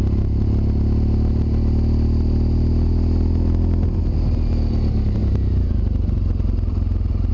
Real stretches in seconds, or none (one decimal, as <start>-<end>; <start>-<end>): 0.0-7.3